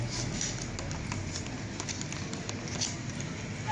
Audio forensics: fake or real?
real